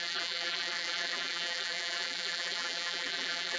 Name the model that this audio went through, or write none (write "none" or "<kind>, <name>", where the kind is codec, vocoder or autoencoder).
vocoder, BigVGAN v2